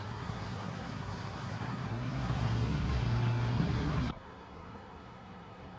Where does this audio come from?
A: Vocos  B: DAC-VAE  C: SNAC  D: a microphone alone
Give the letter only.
C